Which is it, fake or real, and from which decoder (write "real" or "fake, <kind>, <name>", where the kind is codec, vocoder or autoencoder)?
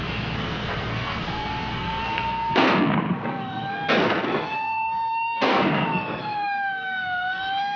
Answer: fake, codec, SNAC